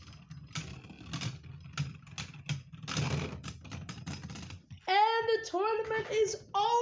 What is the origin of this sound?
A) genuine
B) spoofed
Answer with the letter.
A